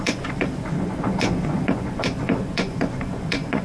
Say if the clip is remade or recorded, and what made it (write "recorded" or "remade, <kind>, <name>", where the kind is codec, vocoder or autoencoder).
remade, vocoder, Vocos